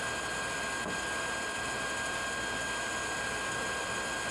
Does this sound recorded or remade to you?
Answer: recorded